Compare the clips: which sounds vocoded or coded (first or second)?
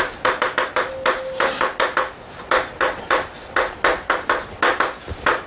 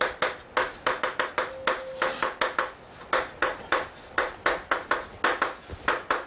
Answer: first